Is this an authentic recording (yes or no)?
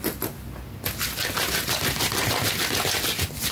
yes